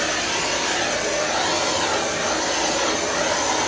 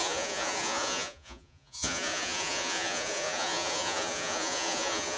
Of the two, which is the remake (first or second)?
second